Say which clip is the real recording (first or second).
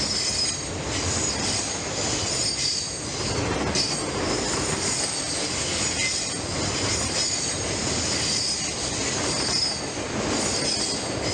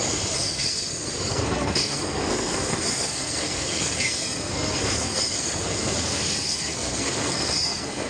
first